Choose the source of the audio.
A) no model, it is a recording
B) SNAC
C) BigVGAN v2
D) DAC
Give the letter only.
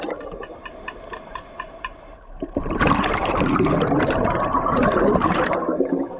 C